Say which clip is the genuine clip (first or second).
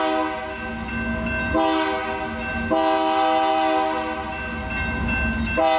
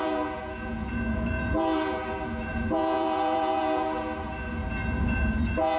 first